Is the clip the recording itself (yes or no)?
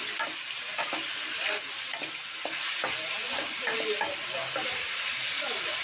yes